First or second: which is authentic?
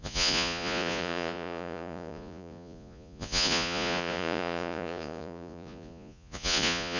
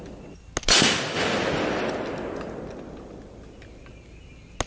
second